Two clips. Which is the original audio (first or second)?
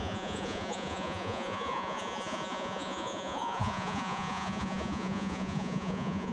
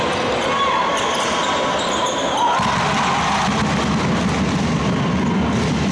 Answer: second